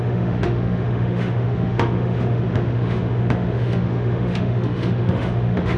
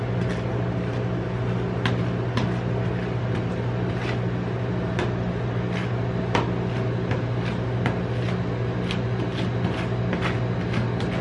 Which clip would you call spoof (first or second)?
first